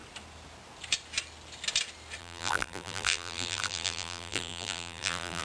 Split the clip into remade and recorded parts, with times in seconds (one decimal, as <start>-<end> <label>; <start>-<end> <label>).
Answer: 0.0-2.2 recorded; 2.2-5.4 remade